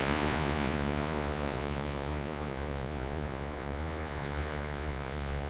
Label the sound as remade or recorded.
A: remade